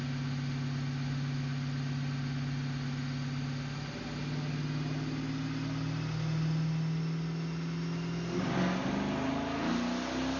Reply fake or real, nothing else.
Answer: real